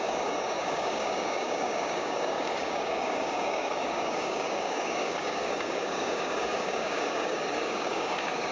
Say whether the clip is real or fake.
fake